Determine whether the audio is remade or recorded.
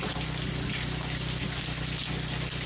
recorded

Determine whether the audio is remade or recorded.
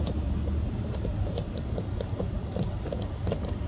remade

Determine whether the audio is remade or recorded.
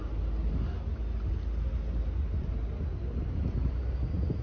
recorded